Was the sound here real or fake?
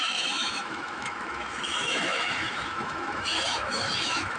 fake